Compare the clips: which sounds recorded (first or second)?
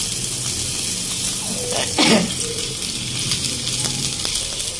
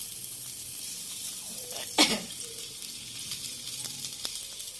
first